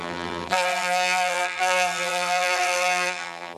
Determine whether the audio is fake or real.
fake